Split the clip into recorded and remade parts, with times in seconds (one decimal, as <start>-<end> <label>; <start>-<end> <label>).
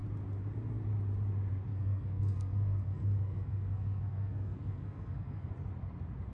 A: 0.0-1.7 recorded; 1.7-5.5 remade; 5.5-6.3 recorded